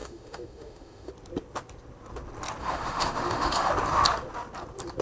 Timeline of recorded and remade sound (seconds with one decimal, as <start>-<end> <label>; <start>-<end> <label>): 0.0-1.1 remade; 1.1-2.6 recorded; 2.6-3.7 remade; 3.7-5.0 recorded